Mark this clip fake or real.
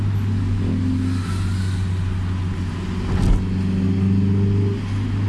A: real